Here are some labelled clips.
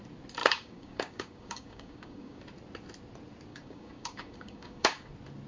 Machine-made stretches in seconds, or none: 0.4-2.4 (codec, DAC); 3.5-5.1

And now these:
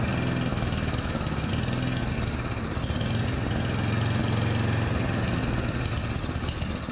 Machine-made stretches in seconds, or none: 0.5-1.5 (autoencoder, DAC-VAE)